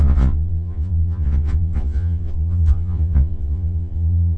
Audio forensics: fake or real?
fake